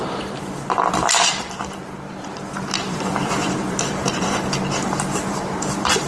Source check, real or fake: fake